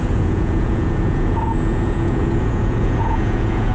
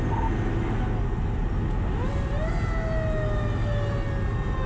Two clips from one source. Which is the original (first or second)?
second